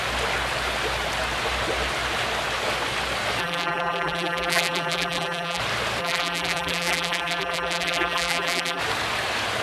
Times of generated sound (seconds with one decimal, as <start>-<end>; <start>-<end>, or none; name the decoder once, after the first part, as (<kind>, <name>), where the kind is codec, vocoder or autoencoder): 3.4-5.6 (vocoder, BigVGAN v2); 6.0-8.8